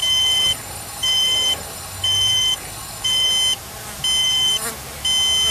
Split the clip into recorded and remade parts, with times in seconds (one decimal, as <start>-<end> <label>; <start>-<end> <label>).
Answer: 0.0-3.3 remade; 3.3-4.2 recorded; 4.2-4.7 remade; 4.7-5.5 recorded